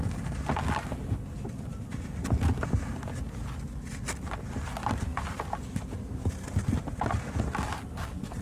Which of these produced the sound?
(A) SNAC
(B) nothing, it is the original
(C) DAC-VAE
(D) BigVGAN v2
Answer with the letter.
B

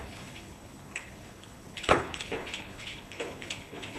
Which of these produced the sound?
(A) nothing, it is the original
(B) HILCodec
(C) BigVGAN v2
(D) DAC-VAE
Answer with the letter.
B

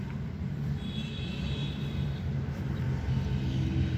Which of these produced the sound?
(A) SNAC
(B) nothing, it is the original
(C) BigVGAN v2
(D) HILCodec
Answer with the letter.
C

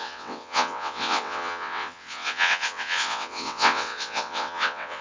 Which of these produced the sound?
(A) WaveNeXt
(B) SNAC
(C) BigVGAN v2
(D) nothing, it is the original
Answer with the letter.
A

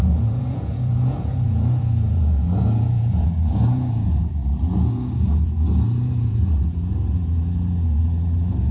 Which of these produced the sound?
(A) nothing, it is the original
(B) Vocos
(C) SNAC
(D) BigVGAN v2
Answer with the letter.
B